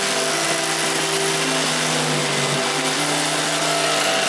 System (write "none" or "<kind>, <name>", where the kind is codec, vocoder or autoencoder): none